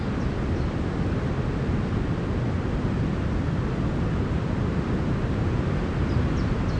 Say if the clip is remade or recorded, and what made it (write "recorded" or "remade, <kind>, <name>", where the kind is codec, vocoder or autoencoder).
recorded